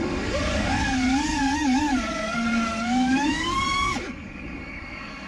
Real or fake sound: fake